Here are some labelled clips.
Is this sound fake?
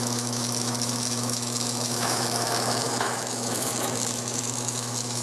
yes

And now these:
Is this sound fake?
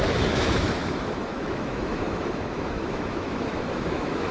yes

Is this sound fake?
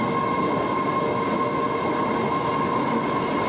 no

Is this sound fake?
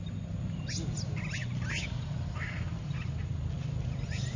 no